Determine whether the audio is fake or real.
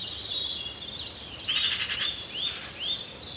real